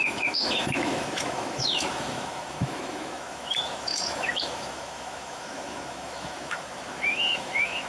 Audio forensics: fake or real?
fake